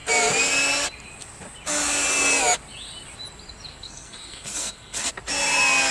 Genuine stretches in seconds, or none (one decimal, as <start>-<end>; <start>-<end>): 0.0-3.7; 5.1-5.9